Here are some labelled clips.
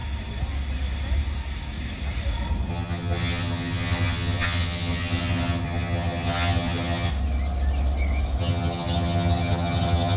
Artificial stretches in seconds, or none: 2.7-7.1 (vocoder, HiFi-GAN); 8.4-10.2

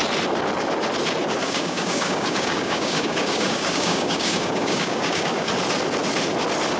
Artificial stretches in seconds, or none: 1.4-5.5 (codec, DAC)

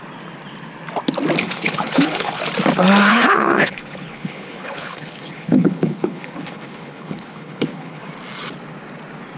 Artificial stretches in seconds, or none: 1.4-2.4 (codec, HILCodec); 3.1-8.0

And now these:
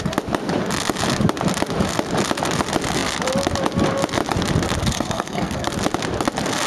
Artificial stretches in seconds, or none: 4.8-5.7 (codec, SNAC)

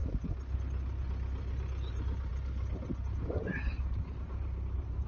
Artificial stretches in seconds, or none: 1.9-2.3 (vocoder, BigVGAN v2); 3.4-5.1

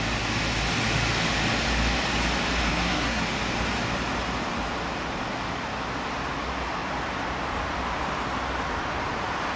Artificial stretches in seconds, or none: 2.7-3.2 (codec, SNAC)